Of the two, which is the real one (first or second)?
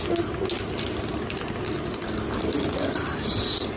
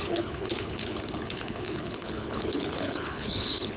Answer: first